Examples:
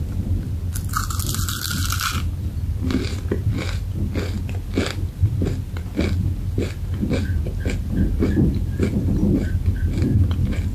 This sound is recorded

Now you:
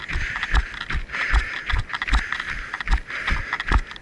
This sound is recorded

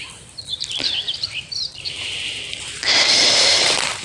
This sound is remade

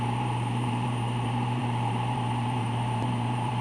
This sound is remade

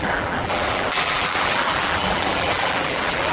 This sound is remade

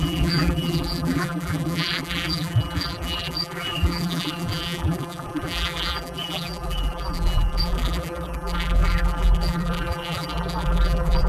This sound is remade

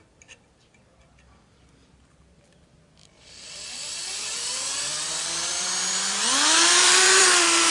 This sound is remade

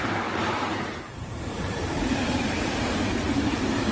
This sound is remade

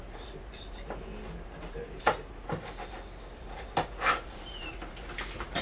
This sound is recorded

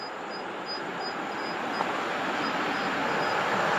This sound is recorded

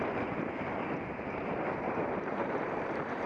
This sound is remade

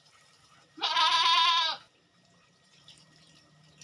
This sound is remade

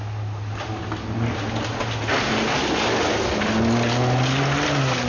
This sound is recorded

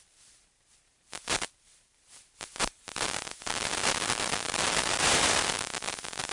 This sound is remade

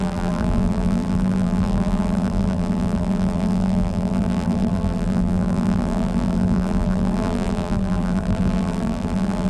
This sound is remade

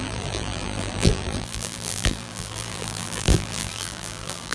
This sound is remade